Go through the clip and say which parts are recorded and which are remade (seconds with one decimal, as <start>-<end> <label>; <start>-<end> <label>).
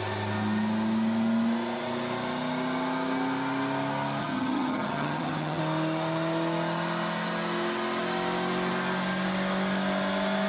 0.0-4.2 recorded; 4.2-5.6 remade; 5.6-10.5 recorded